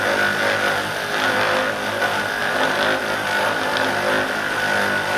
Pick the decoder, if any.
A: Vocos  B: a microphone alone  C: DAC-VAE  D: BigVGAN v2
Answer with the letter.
B